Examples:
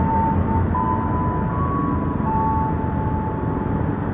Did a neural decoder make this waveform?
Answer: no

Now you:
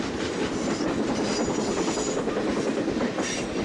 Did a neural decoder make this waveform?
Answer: no